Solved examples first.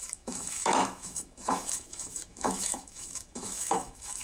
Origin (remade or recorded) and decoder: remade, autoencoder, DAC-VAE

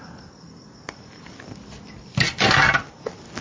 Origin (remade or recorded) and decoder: recorded